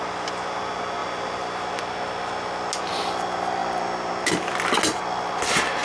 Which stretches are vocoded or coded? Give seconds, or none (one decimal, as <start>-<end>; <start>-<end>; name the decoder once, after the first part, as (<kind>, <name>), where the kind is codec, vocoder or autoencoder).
1.0-1.7 (vocoder, BigVGAN v2)